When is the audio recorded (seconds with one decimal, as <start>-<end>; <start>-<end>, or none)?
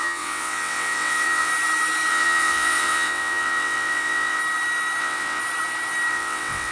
1.5-2.1; 4.4-5.0; 5.4-6.1